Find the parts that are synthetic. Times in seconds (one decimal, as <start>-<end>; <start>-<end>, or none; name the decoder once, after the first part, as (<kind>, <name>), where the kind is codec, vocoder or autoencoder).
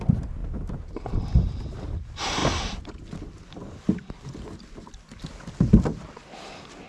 0.4-2.0 (vocoder, BigVGAN v2)